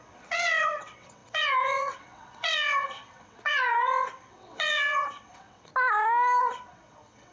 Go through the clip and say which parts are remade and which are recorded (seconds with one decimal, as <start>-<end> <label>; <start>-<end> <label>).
0.0-5.7 remade; 5.7-6.4 recorded; 6.4-7.3 remade